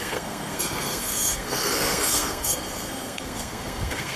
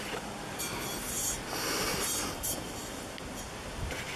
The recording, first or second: second